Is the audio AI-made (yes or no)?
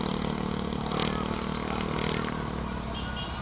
no